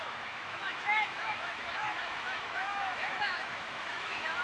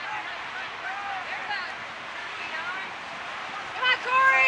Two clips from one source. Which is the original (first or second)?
second